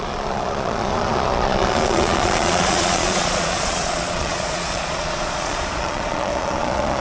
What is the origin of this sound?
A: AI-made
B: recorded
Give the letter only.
A